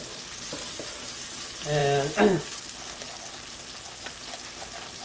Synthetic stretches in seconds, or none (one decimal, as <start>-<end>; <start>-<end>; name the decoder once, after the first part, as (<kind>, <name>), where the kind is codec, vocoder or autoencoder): none